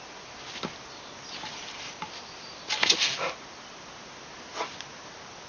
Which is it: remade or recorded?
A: recorded